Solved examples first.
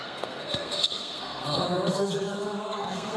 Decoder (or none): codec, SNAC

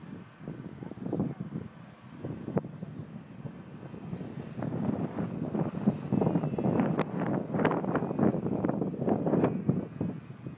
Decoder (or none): none